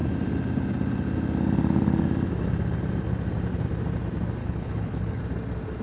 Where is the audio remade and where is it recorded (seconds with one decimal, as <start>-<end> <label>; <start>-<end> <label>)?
0.0-4.4 recorded; 4.4-5.2 remade; 5.2-5.8 recorded